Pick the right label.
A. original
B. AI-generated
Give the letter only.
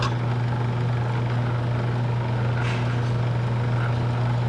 A